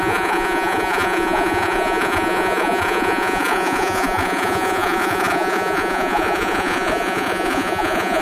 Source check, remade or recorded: remade